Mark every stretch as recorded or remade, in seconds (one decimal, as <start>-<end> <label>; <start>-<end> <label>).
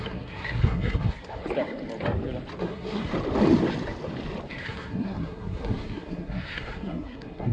0.0-1.4 remade; 1.4-2.6 recorded; 2.6-3.1 remade; 3.1-4.5 recorded; 4.5-7.5 remade